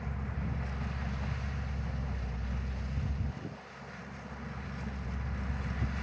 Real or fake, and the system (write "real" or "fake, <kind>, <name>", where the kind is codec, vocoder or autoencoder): real